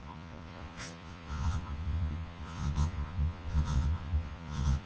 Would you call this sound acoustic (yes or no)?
no